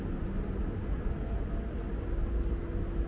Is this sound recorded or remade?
recorded